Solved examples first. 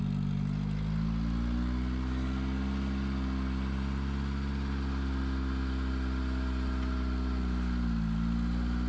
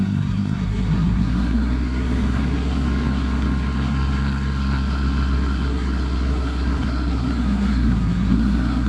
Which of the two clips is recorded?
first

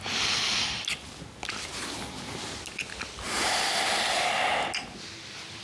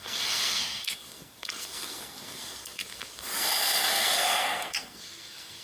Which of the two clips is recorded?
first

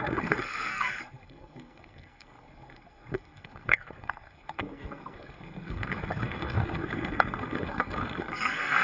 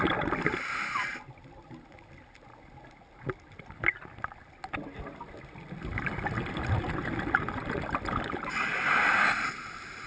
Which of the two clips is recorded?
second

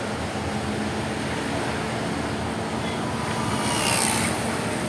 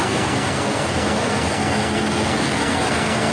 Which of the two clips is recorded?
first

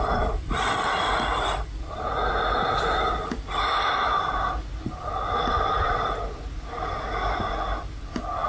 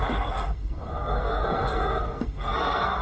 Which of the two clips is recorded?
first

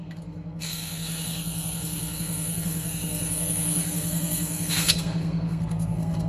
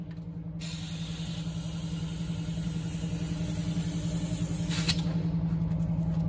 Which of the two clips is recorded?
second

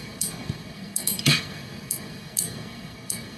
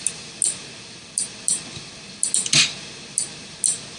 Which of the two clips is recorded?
second